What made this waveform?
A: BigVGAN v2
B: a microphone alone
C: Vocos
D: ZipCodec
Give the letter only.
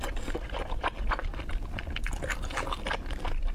A